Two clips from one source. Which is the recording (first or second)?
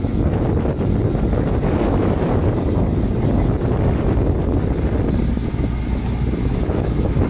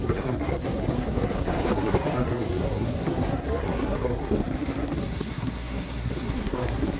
first